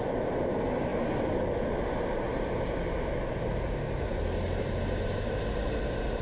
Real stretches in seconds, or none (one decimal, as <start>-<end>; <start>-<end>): 0.0-6.2